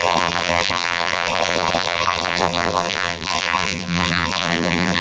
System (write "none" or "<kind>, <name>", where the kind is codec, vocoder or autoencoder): vocoder, BigVGAN v2